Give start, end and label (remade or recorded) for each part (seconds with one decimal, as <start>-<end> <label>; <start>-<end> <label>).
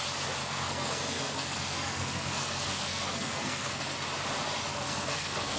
0.0-0.4 recorded; 0.4-3.8 remade; 3.8-4.7 recorded; 4.7-5.6 remade